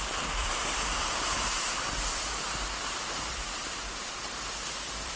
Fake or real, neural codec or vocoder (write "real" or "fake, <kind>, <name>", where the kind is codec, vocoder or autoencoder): fake, vocoder, BigVGAN v2